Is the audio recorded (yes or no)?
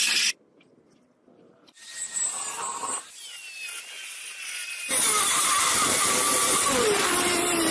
yes